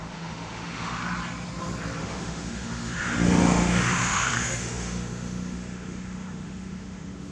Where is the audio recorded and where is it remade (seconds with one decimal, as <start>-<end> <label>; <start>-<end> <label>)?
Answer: 0.0-1.0 remade; 1.0-2.0 recorded; 2.0-7.3 remade